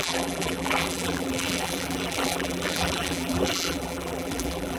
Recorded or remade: remade